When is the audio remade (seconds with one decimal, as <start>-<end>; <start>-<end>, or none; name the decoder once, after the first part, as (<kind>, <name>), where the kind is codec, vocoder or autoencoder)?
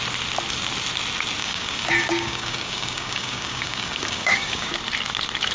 1.4-4.7 (codec, DAC)